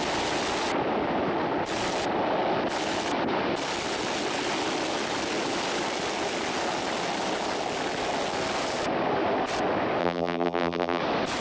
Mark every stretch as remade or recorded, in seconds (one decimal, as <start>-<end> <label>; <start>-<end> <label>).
0.0-10.0 recorded; 10.0-11.0 remade; 11.0-11.4 recorded